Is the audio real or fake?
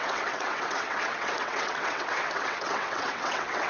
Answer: fake